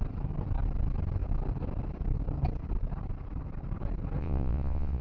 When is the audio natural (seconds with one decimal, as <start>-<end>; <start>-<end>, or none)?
0.0-4.2